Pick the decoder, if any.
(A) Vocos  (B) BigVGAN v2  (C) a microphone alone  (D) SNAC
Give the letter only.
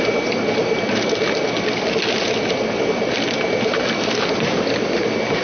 C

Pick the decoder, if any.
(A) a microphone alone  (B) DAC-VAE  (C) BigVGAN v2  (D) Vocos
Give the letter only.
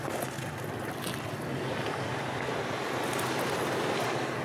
A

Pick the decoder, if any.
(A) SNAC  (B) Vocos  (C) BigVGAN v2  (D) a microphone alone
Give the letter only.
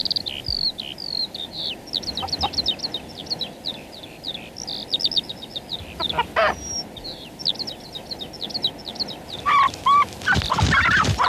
D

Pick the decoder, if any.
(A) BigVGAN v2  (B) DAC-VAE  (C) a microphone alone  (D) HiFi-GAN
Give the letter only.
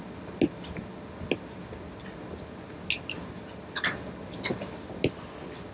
C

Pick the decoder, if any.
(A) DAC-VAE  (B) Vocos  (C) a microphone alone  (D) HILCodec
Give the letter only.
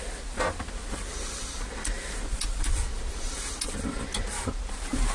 C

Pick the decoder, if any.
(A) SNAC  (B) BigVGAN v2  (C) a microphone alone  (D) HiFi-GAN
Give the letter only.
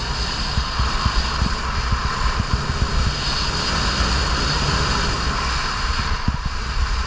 C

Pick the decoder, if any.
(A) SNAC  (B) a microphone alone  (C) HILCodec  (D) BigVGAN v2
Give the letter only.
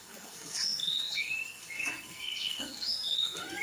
A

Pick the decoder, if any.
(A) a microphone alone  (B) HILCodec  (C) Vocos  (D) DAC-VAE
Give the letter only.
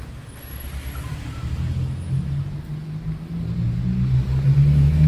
A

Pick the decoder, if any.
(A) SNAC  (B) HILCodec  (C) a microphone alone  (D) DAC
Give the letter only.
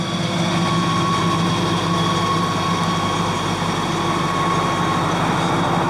C